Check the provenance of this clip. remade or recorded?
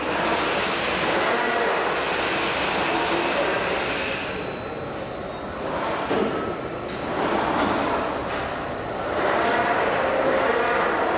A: recorded